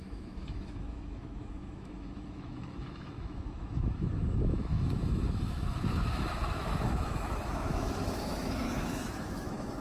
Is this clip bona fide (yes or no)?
no